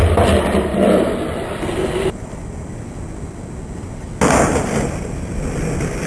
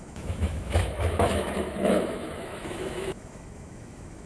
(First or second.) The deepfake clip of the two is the second